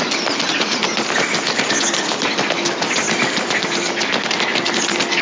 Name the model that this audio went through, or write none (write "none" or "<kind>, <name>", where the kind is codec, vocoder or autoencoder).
none